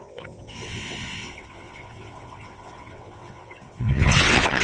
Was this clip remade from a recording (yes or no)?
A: yes